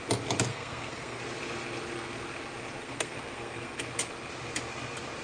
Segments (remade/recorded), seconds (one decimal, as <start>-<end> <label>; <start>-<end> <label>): 0.0-0.5 recorded; 0.5-1.2 remade; 1.2-2.8 recorded; 2.8-3.8 remade; 3.8-5.2 recorded